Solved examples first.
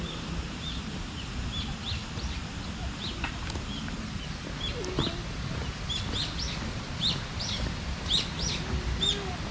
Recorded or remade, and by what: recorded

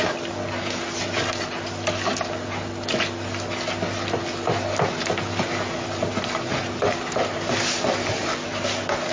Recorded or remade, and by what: recorded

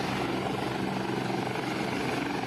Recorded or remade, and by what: recorded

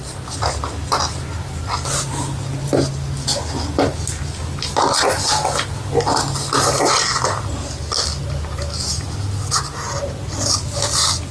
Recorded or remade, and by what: recorded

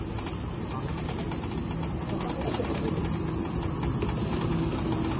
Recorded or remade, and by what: recorded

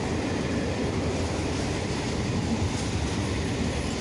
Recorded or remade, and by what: recorded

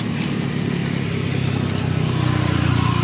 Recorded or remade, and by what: recorded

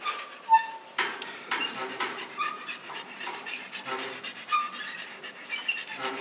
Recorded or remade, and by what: remade, vocoder, BigVGAN v2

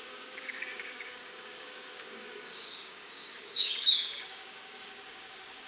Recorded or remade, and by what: remade, codec, DAC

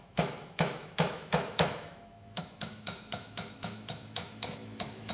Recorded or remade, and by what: remade, autoencoder, DAC-VAE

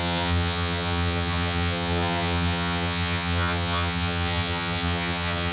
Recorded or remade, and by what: remade, vocoder, HiFi-GAN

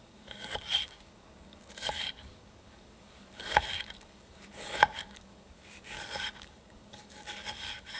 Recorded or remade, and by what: remade, codec, DAC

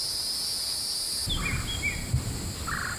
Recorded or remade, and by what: recorded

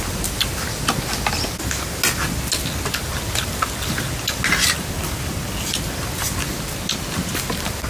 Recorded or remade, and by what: recorded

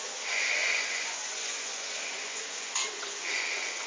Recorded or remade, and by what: remade, vocoder, Vocos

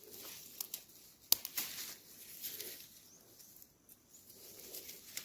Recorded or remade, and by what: recorded